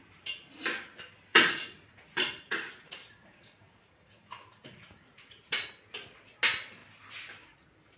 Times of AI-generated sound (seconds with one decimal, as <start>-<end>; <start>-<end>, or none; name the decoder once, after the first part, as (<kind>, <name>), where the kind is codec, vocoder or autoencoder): 1.3-5.7 (vocoder, Vocos)